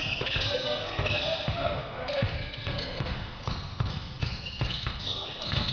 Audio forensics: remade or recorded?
remade